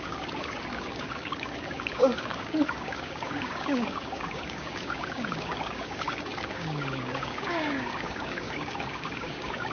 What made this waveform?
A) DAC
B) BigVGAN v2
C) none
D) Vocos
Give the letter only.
A